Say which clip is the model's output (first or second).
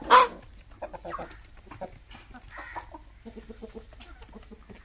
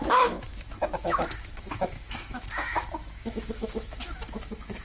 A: second